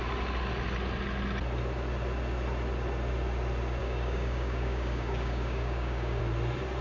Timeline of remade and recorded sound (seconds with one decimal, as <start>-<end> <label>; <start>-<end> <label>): 0.0-3.8 recorded; 3.8-6.2 remade; 6.2-6.8 recorded